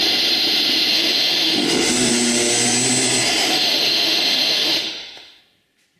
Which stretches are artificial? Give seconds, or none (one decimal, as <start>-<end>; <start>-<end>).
0.9-2.1; 3.4-5.4